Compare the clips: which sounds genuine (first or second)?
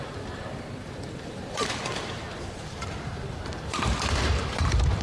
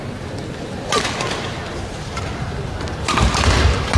second